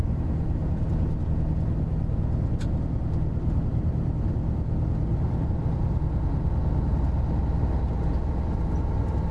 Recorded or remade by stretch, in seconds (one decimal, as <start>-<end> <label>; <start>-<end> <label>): 0.0-3.7 recorded; 3.7-4.4 remade; 4.4-5.1 recorded; 5.1-6.0 remade; 6.0-9.3 recorded